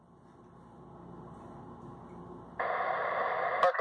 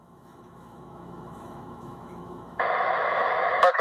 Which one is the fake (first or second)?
second